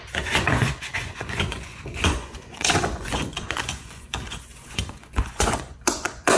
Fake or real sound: fake